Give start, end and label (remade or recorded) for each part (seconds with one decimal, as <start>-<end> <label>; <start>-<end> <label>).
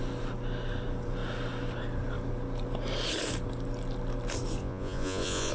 0.0-4.6 recorded; 4.6-5.5 remade